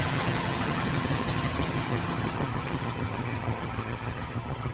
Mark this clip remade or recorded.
remade